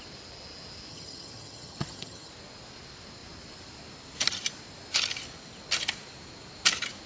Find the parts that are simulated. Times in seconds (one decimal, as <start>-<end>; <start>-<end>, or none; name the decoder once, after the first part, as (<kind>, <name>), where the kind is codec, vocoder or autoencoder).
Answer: 0.9-2.3 (vocoder, HiFi-GAN)